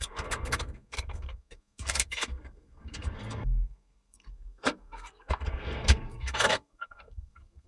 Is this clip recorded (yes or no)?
no